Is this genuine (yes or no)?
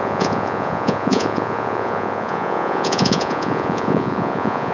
no